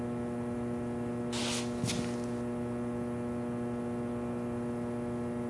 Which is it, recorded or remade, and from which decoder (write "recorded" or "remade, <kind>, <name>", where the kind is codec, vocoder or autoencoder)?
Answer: recorded